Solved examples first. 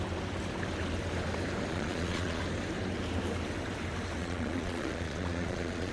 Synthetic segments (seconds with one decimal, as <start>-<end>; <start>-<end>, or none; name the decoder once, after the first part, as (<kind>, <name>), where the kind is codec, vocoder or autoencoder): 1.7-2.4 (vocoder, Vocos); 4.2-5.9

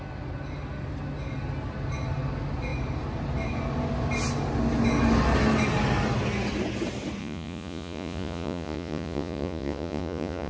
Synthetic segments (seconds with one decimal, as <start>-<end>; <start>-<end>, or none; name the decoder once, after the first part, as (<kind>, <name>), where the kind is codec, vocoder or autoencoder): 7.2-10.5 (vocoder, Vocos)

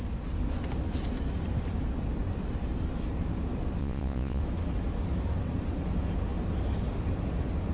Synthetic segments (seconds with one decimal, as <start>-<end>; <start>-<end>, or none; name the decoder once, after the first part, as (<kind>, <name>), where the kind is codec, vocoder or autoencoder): 3.8-4.4 (vocoder, Vocos)

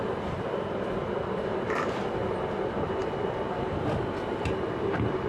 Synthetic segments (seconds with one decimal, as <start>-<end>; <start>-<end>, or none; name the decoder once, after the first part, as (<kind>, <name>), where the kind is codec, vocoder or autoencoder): none

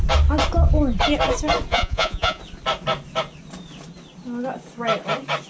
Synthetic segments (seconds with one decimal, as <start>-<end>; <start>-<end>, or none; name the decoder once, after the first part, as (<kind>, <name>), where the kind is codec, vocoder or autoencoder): 1.7-2.4 (vocoder, Vocos)

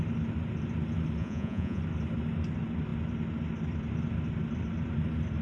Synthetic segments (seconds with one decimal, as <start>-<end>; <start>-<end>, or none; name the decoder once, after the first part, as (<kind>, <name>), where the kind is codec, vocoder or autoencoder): 1.2-1.8 (vocoder, Vocos)

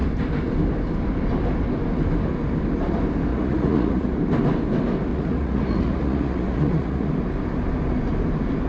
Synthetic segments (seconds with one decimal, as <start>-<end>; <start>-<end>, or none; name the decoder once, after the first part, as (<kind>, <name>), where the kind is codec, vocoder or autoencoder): 3.3-4.2 (vocoder, Vocos); 5.1-7.1